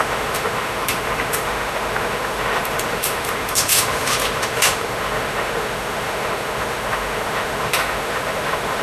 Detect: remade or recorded remade